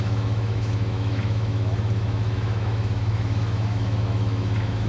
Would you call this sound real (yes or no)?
no